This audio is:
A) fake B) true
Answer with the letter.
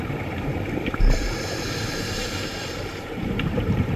A